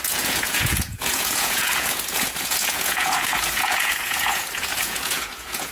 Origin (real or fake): fake